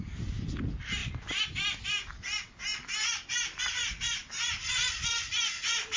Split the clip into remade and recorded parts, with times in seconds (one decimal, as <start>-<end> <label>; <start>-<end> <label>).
0.0-6.0 recorded